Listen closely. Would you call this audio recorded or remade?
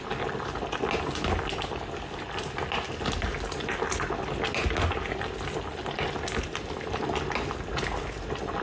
recorded